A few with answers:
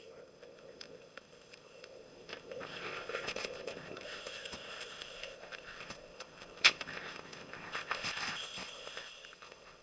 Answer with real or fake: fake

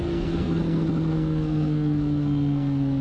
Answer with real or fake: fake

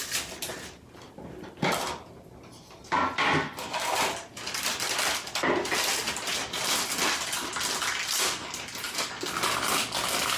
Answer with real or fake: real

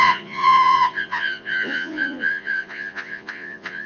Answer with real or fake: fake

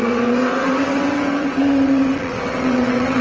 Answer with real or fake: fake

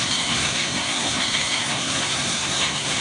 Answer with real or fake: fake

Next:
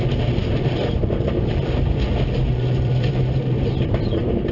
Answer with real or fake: fake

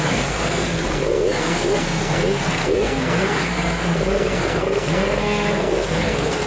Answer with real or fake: fake